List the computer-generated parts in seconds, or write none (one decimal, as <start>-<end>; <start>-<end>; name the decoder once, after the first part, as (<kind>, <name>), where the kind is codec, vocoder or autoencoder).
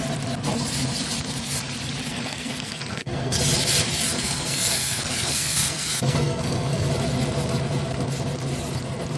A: 2.1-3.4 (codec, SNAC); 4.1-6.9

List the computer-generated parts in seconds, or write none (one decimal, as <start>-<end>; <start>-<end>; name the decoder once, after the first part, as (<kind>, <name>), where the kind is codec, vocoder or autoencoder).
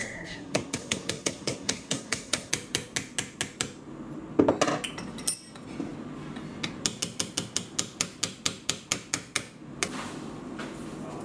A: 0.0-2.5 (codec, SNAC)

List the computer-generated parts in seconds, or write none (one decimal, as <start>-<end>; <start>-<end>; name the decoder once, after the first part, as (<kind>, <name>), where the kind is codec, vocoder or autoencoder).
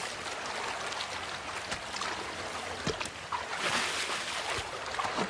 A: none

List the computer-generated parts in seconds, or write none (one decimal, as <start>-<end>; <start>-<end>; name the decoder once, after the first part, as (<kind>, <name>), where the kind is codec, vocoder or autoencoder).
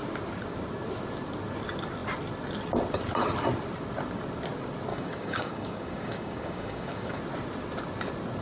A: 4.9-7.2 (codec, DAC)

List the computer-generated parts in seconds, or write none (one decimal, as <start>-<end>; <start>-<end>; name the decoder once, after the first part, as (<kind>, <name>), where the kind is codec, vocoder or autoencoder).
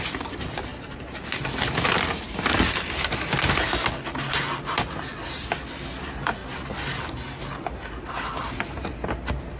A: none